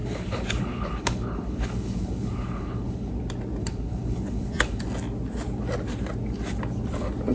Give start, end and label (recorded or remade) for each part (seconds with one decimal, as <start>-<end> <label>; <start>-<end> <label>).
0.0-3.1 remade; 3.1-3.6 recorded; 3.6-4.8 remade; 4.8-7.3 recorded